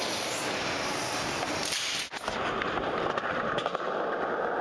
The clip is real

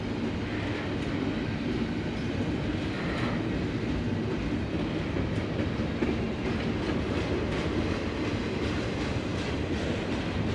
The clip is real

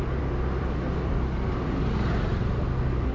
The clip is real